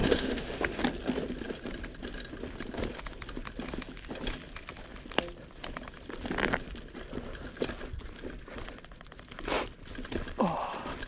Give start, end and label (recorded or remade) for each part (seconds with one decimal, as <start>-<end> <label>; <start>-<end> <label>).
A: 0.0-0.8 remade; 0.8-11.1 recorded